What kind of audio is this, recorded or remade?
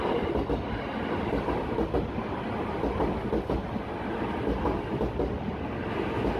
recorded